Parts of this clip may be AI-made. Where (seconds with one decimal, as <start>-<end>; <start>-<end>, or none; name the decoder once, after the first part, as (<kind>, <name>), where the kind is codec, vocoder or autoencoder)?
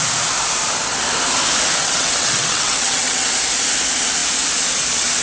1.8-3.3 (vocoder, WaveNeXt)